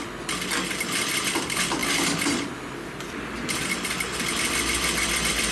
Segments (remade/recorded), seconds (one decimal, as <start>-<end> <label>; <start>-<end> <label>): 0.0-5.5 recorded